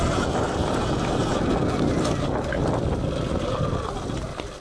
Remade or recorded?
recorded